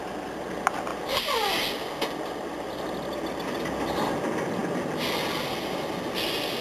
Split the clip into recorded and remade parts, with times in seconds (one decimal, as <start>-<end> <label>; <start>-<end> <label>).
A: 0.0-6.6 recorded